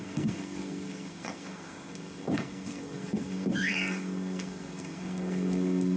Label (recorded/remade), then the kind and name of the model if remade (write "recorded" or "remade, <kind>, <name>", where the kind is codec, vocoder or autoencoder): remade, codec, SNAC